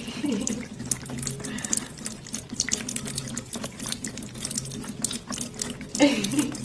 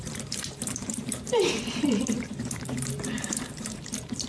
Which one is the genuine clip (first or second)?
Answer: first